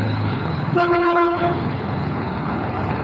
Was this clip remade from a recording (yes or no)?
yes